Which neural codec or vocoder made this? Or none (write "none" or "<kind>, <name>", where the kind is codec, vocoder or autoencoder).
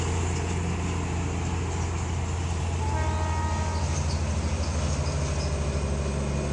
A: none